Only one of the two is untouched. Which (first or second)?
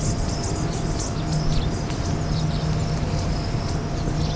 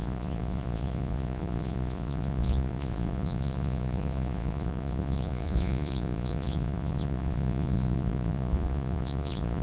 first